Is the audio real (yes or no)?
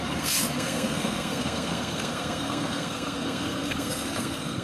no